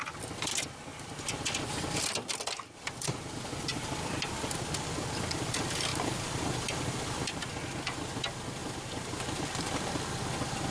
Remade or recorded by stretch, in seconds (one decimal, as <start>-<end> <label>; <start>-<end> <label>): 0.0-0.9 recorded; 0.9-3.1 remade; 3.1-3.7 recorded; 3.7-4.5 remade; 4.5-5.9 recorded; 5.9-7.4 remade; 7.4-8.6 recorded; 8.6-9.8 remade; 9.8-10.7 recorded